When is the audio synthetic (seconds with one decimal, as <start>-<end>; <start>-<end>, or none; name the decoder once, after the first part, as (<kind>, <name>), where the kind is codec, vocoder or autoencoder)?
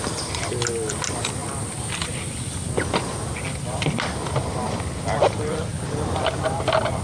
none